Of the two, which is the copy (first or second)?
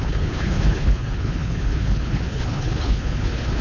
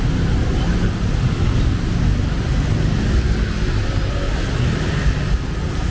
first